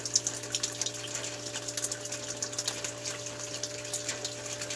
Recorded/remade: recorded